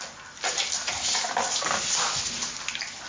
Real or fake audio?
real